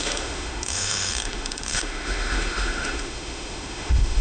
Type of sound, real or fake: fake